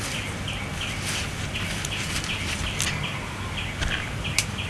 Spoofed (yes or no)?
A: no